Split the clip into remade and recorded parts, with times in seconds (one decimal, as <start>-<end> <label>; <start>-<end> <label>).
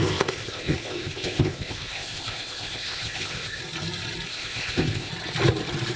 0.0-3.6 remade; 3.6-4.3 recorded; 4.3-5.1 remade; 5.1-6.0 recorded